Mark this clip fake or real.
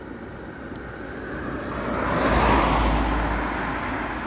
real